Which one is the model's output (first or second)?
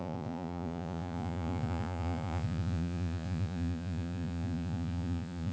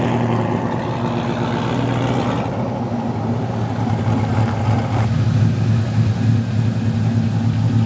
first